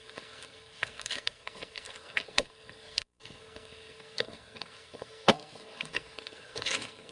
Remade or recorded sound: remade